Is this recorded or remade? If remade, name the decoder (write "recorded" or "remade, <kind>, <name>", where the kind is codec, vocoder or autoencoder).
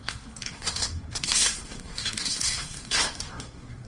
remade, codec, SNAC